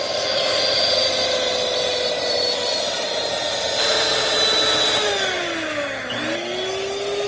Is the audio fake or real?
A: real